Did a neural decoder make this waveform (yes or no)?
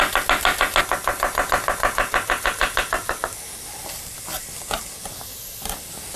no